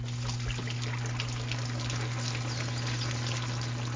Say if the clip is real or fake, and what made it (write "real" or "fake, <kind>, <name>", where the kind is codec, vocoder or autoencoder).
real